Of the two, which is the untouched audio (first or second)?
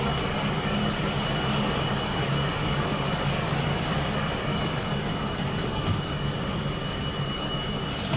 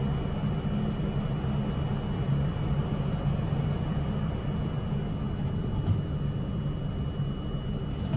second